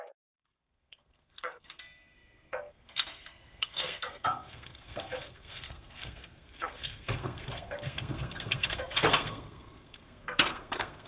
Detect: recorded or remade remade